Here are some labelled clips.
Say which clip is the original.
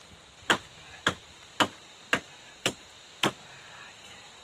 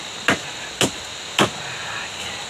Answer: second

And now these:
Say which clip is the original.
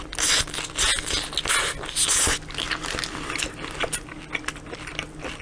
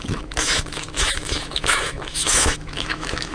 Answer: first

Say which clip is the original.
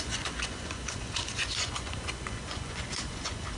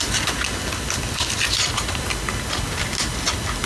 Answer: second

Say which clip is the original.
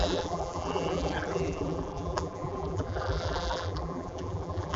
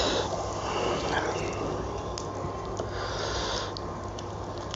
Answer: second